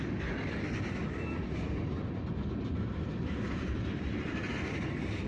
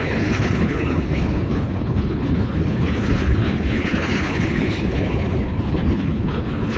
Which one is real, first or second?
first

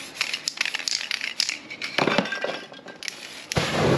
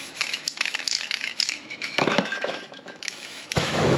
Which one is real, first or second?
first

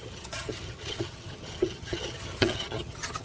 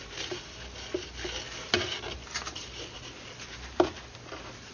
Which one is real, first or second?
second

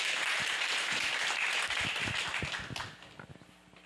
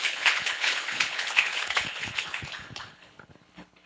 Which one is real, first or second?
first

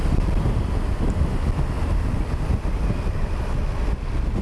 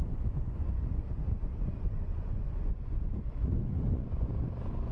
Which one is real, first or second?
first